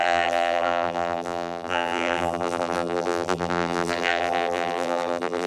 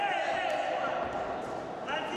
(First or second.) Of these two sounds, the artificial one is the first